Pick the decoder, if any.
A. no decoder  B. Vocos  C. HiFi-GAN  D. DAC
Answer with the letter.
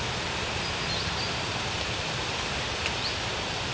A